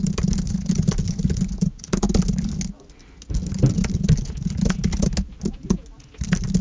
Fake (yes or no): no